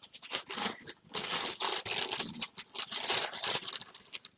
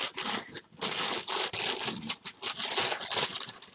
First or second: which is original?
second